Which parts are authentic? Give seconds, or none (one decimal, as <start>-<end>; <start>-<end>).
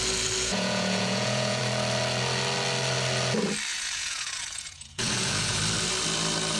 0.0-0.4; 1.6-3.7; 5.6-6.6